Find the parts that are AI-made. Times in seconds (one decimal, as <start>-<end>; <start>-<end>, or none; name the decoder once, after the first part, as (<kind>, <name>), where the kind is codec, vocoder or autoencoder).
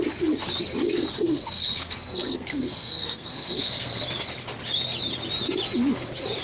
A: 1.2-4.0 (codec, SNAC)